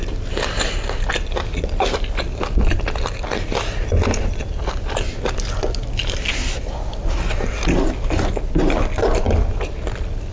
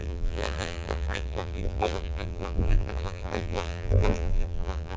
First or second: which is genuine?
first